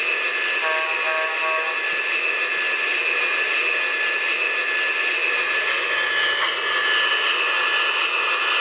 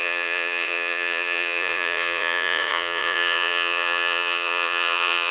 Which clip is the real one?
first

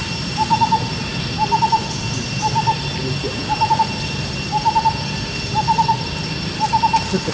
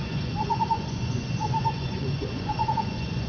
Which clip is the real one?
first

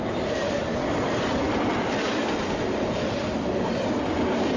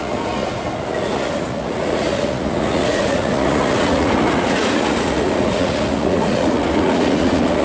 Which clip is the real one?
first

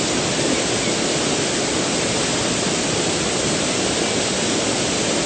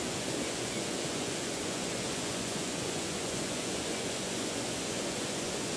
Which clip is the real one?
first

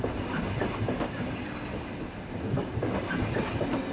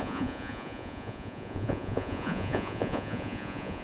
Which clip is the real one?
first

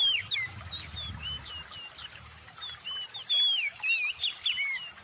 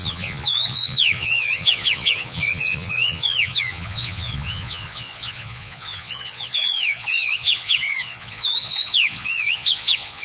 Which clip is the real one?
first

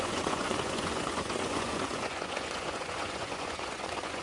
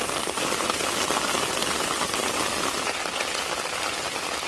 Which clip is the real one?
second